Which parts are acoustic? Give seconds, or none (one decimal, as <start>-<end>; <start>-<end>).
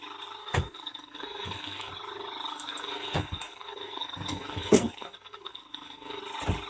0.0-0.4; 1.9-2.5; 6.2-6.7